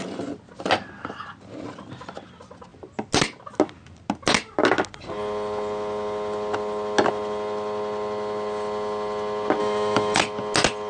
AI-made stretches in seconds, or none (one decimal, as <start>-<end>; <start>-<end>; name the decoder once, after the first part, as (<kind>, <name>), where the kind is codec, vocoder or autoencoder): 9.6-10.2 (autoencoder, DAC-VAE)